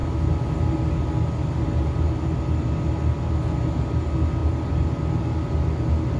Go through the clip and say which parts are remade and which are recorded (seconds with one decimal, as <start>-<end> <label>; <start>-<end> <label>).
0.0-6.2 recorded